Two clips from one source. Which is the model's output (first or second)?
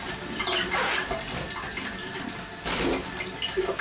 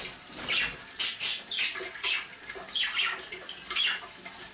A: second